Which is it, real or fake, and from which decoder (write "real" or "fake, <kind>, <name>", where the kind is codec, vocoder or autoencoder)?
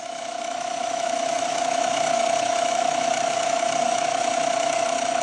fake, autoencoder, DAC-VAE